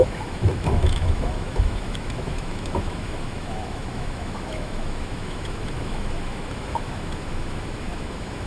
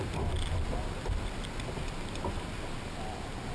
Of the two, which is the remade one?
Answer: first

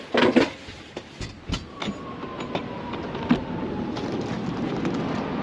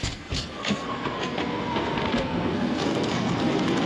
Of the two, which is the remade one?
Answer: second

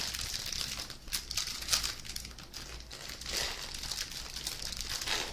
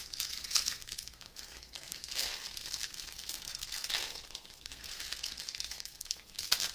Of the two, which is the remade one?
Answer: second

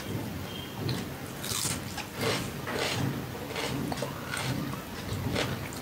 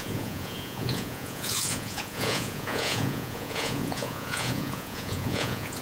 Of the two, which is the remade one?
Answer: second